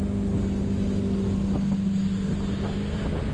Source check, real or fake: real